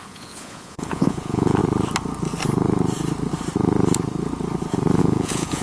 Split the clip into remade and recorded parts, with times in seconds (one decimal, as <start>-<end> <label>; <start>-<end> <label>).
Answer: 0.0-1.6 remade; 1.6-5.0 recorded; 5.0-5.6 remade